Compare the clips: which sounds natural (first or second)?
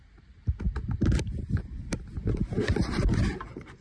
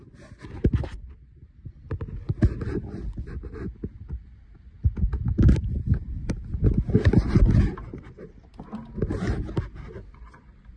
second